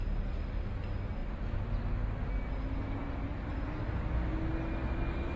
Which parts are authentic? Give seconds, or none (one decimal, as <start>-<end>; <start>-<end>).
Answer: 0.0-5.4